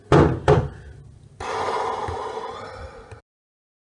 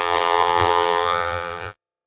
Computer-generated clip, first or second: second